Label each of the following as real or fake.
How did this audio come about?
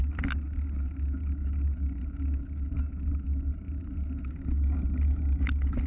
real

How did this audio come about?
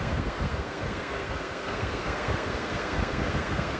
fake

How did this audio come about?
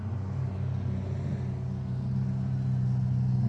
real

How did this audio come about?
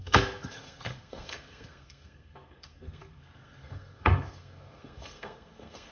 fake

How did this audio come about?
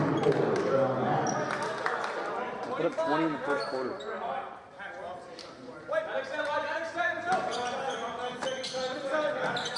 real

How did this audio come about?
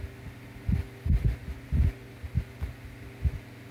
real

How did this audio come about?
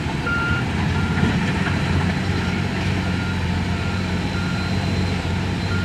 fake